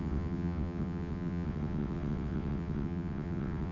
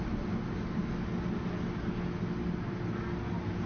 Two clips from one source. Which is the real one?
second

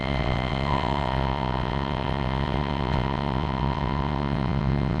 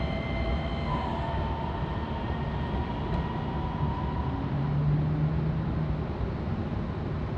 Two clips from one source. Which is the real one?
second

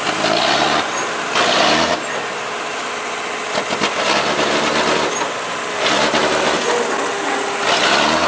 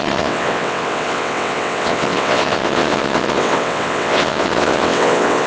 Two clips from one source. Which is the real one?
first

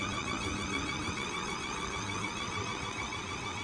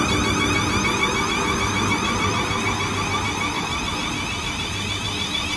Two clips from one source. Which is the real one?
second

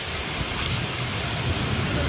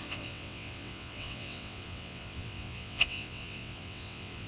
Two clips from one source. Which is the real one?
first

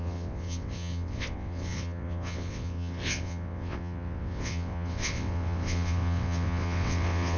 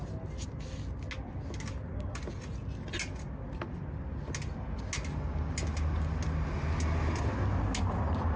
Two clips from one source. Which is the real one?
second